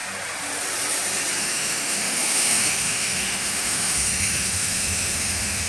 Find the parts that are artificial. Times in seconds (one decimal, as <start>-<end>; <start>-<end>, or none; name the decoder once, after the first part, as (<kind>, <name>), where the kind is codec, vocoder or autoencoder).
1.4-5.7 (autoencoder, DAC-VAE)